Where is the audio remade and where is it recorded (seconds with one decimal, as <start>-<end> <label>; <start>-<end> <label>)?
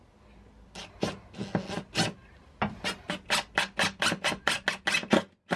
0.0-5.6 recorded